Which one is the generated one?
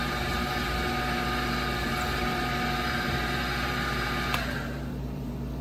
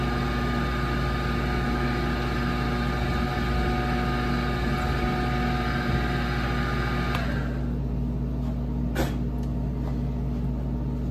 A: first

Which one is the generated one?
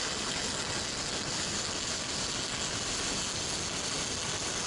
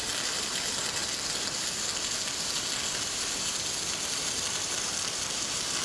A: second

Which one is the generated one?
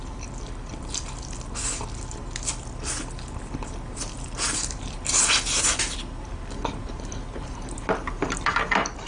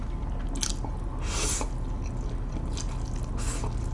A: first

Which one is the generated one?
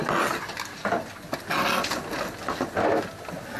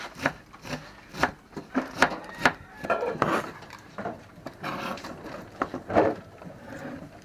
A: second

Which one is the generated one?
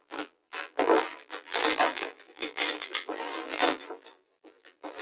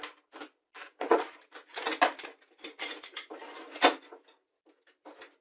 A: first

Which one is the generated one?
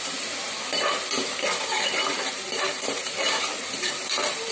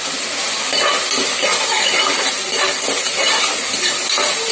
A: first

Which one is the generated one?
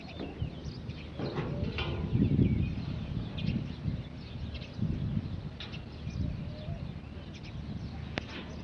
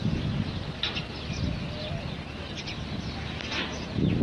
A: second